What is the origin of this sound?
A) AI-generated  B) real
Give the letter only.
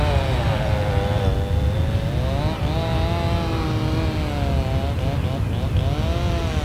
B